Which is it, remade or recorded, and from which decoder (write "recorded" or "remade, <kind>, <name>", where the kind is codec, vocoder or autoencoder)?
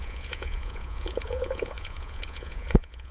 remade, vocoder, Vocos